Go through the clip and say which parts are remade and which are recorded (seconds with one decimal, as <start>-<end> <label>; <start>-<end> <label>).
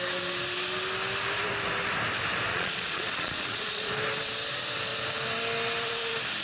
0.0-2.5 recorded; 2.5-3.9 remade; 3.9-6.4 recorded